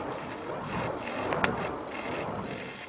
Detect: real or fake real